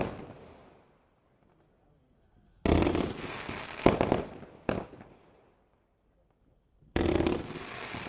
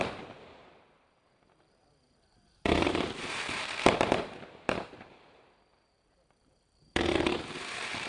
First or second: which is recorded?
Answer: first